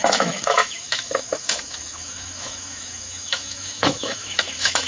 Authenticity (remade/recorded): remade